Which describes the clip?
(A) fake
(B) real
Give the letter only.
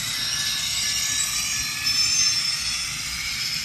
B